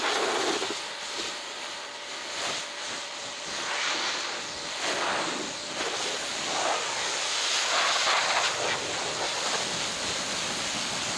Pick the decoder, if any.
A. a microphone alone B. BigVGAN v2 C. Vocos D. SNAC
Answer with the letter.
A